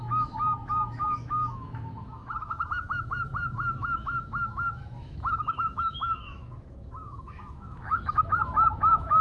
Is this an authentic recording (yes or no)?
no